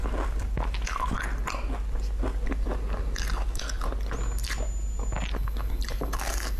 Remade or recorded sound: recorded